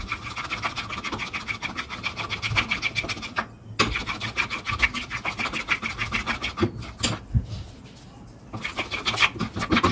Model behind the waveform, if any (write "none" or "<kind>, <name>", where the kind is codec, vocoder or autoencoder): none